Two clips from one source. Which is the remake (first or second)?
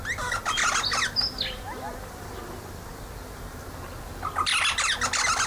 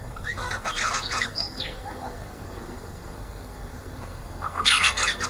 second